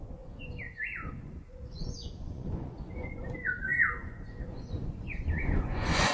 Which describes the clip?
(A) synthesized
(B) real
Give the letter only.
A